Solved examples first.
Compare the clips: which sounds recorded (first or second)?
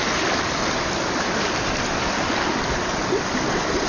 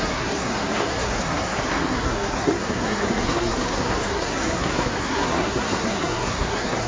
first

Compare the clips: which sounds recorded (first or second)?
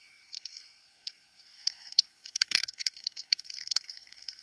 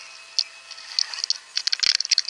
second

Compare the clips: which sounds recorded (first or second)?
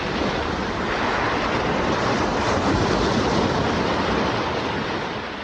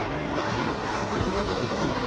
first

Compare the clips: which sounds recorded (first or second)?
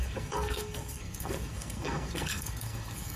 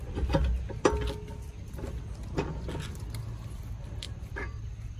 second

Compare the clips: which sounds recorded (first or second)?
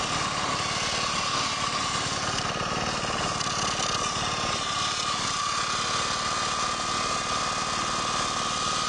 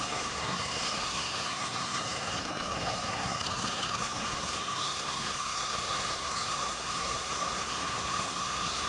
first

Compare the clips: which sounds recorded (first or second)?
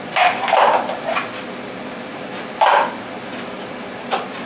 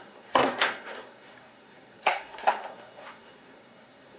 first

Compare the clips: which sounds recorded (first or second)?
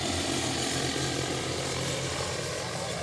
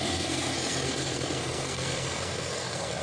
first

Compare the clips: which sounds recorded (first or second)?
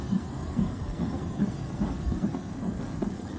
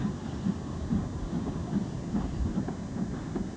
second